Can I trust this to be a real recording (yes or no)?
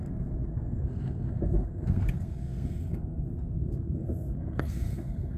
no